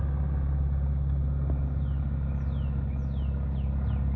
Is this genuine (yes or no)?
yes